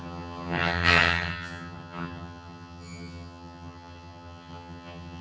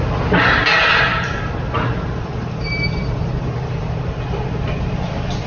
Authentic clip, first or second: second